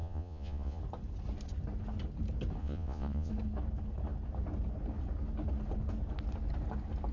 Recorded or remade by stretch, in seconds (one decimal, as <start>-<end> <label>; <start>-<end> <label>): 0.0-0.8 remade; 0.8-2.6 recorded; 2.6-3.3 remade; 3.3-7.1 recorded